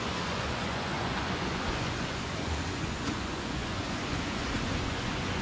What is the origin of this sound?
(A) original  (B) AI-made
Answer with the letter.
B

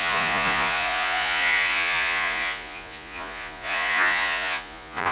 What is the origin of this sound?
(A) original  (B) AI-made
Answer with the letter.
B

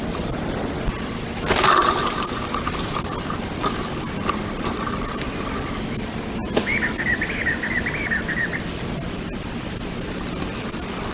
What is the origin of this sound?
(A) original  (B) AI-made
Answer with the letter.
A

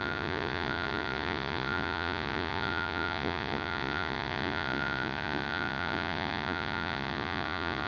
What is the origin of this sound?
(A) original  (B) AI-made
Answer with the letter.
B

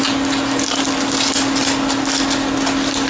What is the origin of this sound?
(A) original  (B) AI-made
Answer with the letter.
A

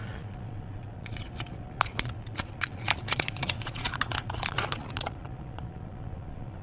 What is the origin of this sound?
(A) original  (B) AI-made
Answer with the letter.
B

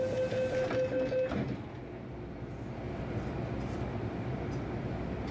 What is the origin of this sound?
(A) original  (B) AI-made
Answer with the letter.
A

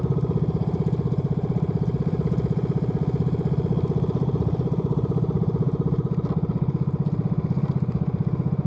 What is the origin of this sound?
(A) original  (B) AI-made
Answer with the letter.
A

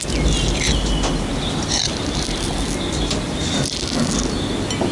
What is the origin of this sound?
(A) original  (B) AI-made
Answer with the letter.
A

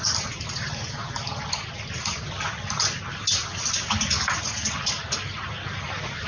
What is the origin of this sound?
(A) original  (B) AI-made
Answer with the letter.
A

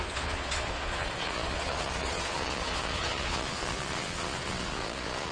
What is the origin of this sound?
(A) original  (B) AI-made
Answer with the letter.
B